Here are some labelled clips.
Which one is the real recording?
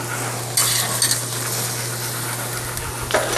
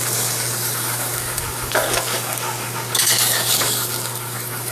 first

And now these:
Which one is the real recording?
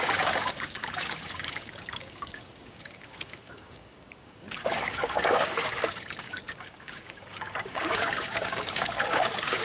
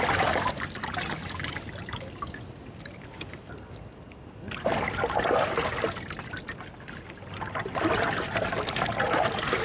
second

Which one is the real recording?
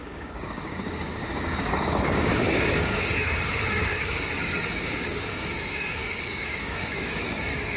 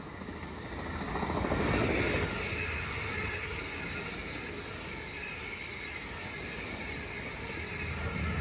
second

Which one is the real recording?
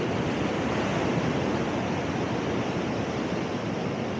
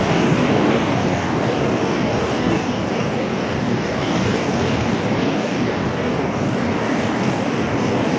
first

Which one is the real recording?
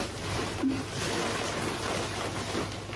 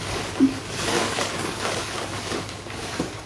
first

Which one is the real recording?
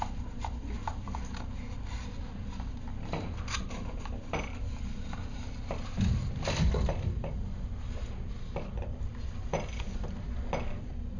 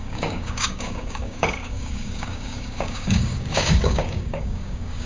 first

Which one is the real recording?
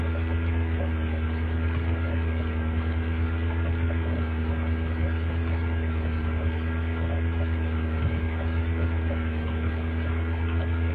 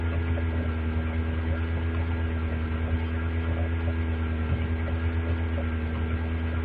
second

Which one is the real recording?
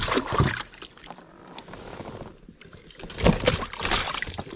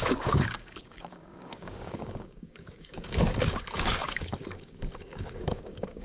first